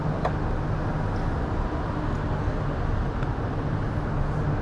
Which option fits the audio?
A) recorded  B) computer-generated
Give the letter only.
A